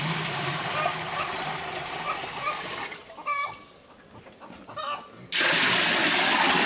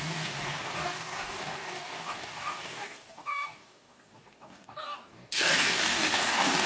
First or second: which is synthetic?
second